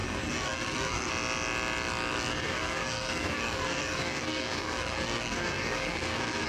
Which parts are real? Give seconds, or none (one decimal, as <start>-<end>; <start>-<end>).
1.1-2.3